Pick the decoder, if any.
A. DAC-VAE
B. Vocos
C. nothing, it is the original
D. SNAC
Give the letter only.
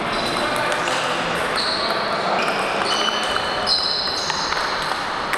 C